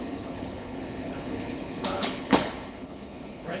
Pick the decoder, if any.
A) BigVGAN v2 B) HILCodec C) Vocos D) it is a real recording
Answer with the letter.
B